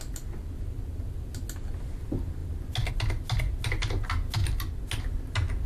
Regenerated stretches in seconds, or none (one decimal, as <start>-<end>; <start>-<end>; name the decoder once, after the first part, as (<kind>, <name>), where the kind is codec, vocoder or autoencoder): none